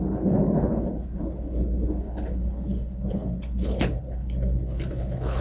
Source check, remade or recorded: remade